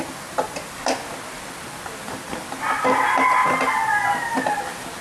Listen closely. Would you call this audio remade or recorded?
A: recorded